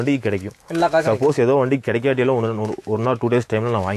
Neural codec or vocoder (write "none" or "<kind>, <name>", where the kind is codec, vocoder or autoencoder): autoencoder, DAC-VAE